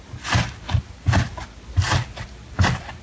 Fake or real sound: real